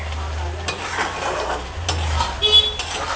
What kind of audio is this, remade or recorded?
recorded